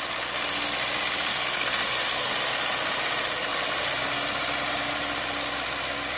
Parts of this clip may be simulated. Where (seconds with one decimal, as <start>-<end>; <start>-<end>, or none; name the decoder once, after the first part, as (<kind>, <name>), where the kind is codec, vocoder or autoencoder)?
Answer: 1.3-2.3 (codec, SNAC)